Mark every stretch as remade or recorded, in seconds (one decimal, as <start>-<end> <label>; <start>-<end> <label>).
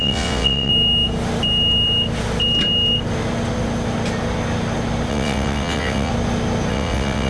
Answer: 0.0-0.7 remade; 0.7-5.1 recorded; 5.1-6.1 remade; 6.1-6.7 recorded; 6.7-7.3 remade